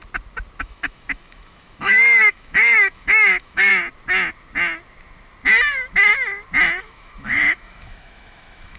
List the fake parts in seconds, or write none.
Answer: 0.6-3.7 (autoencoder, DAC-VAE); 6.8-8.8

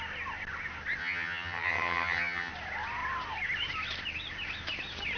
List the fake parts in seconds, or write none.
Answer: 1.0-2.5 (vocoder, HiFi-GAN)